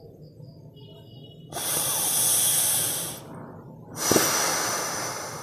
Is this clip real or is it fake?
real